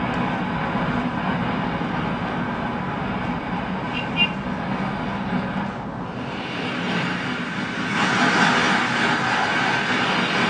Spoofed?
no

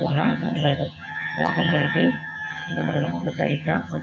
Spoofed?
yes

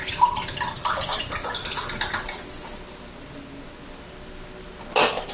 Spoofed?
no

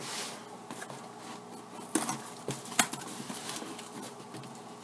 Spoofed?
no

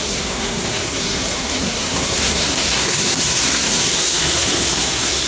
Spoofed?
yes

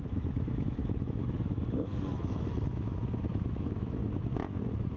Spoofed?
yes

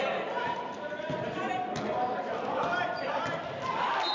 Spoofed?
no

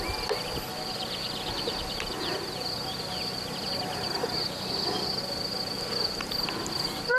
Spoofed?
no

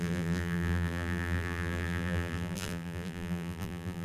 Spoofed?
yes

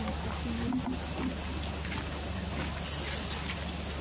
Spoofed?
no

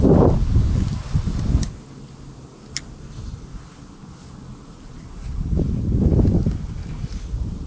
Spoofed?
no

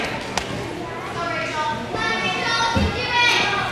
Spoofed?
no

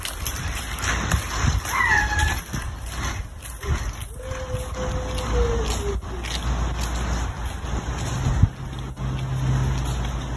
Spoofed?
no